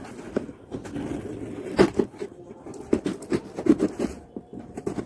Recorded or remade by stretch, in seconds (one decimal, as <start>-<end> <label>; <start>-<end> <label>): 0.0-0.5 recorded; 0.5-3.6 remade; 3.6-5.1 recorded